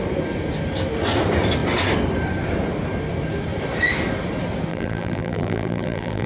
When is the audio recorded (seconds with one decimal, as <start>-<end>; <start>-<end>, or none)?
0.0-4.7